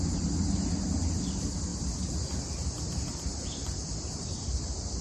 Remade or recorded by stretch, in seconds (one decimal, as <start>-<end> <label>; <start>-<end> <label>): 0.0-5.0 recorded

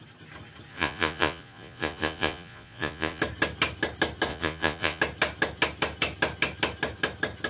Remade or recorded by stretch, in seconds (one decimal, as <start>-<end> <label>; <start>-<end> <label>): 0.0-0.7 recorded; 0.7-3.2 remade; 3.2-4.3 recorded; 4.3-5.0 remade; 5.0-7.5 recorded

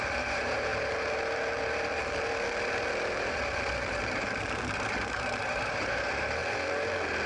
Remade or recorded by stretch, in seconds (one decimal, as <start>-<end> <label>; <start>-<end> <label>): 0.0-0.7 remade; 0.7-5.1 recorded; 5.1-6.4 remade; 6.4-7.3 recorded